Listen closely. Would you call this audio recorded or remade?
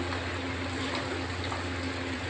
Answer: remade